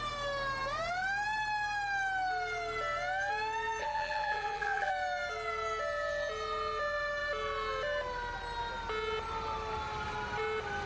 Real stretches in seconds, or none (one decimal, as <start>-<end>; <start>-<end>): 0.0-3.8; 4.9-10.9